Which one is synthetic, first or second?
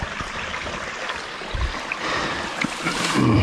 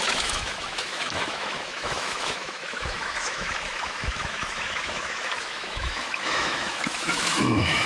second